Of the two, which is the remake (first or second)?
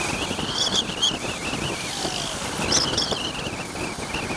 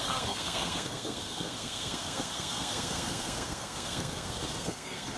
second